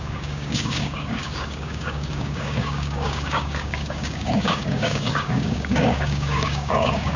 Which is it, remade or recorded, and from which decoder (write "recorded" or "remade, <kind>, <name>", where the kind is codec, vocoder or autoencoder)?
remade, codec, DAC